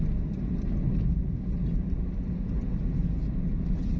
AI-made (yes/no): no